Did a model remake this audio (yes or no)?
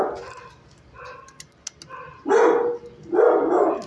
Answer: no